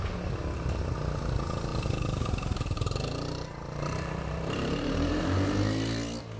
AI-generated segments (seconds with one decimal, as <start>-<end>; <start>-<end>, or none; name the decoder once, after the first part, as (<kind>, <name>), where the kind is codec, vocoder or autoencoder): 1.7-5.2 (vocoder, BigVGAN v2)